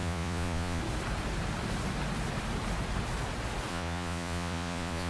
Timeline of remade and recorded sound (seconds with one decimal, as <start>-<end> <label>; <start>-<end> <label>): 0.0-0.8 remade; 0.8-3.7 recorded; 3.7-5.1 remade